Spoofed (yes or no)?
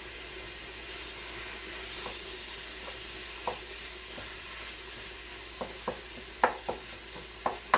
no